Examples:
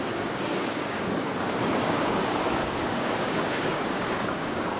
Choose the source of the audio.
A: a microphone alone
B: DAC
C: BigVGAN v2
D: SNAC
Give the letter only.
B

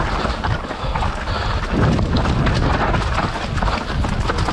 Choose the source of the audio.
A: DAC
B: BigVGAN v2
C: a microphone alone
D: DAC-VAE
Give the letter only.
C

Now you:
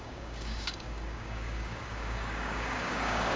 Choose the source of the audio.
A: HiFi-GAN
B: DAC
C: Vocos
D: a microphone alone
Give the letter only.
B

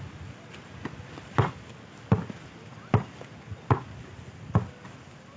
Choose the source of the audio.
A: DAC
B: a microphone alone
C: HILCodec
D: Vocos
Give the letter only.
B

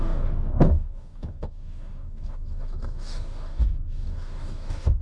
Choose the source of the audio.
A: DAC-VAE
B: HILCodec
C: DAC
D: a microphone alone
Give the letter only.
C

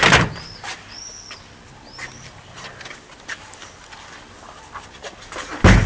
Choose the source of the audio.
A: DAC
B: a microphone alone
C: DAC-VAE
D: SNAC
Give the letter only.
B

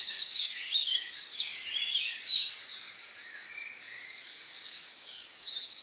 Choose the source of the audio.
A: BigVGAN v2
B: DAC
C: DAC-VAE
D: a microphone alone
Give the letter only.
B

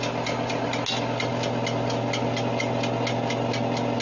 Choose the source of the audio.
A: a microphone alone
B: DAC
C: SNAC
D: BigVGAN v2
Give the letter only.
A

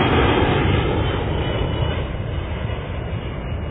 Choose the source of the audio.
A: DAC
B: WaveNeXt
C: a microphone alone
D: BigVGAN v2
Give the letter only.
C